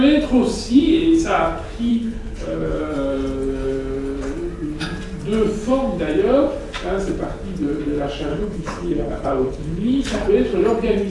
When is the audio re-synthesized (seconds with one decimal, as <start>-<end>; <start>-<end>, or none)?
1.9-2.8; 8.3-10.3